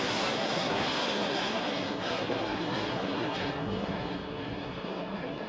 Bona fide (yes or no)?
no